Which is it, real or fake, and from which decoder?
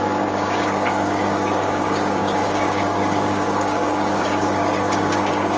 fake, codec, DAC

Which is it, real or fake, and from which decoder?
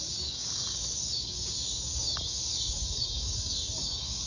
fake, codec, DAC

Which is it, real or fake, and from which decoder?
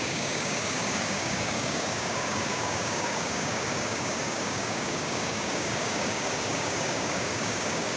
fake, codec, DAC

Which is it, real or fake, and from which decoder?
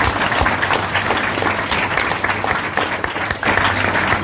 real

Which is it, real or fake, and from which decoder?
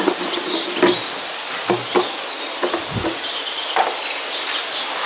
real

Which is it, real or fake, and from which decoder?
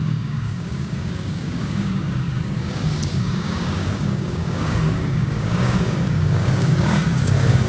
fake, codec, DAC